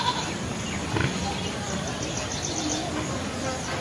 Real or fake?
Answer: real